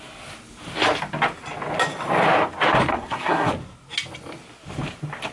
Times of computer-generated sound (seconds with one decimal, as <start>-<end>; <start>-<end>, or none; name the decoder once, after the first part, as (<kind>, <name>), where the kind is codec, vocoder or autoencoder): 2.9-3.5 (codec, SNAC)